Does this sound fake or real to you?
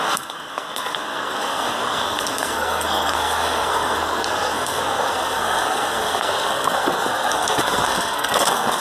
fake